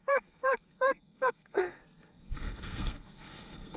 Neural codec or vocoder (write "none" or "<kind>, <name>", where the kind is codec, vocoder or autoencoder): codec, SNAC